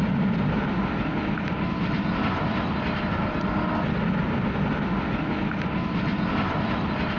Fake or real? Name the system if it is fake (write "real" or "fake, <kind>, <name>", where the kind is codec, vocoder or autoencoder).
real